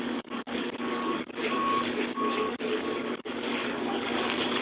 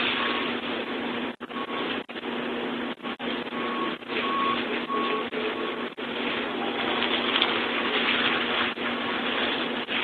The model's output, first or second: first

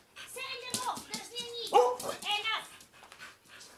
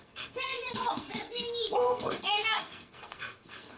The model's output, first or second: second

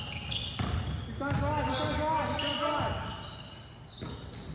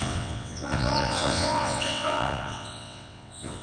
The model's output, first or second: second